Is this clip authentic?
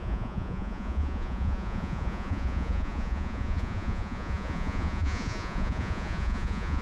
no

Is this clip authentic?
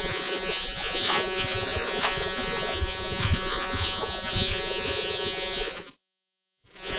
no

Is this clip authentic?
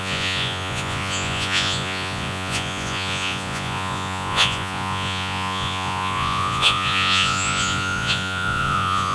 no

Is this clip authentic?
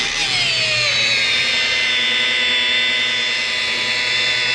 yes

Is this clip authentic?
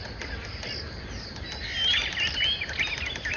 yes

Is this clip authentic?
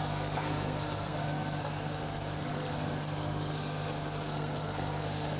no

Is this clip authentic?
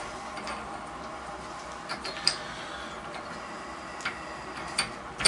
yes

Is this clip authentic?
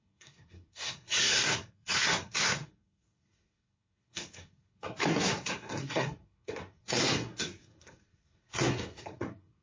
no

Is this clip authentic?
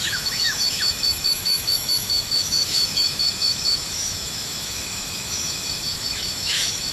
no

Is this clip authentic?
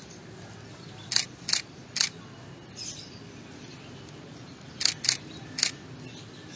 yes